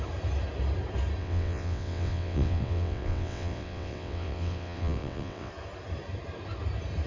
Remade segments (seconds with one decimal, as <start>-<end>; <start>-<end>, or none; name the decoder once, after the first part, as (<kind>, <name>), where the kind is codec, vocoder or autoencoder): 1.2-5.5 (vocoder, WaveNeXt)